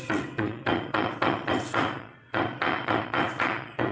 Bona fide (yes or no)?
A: no